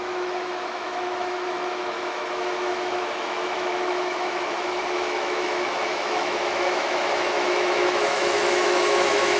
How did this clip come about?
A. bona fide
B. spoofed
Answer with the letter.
B